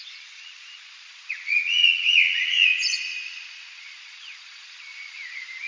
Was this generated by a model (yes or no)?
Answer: yes